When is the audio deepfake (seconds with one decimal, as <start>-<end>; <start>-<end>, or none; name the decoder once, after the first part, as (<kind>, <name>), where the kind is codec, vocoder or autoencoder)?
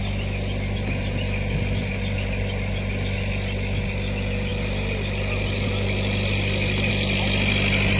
none